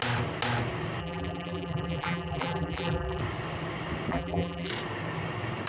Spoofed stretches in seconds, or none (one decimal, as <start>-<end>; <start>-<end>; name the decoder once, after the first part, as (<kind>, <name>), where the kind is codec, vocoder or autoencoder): 1.0-3.2 (vocoder, BigVGAN v2); 4.1-4.7